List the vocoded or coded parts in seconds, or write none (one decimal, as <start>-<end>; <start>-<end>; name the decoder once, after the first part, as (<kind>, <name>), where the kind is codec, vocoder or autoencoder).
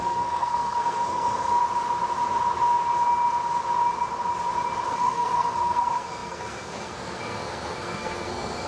0.0-1.6 (codec, SNAC); 4.9-8.7